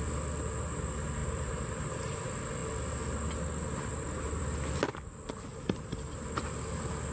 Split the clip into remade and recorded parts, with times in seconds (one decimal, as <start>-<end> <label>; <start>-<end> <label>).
0.0-1.2 recorded; 1.2-2.2 remade; 2.2-5.5 recorded; 5.5-6.2 remade; 6.2-7.1 recorded